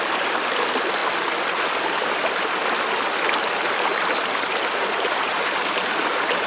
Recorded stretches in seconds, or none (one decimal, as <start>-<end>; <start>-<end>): 0.0-6.5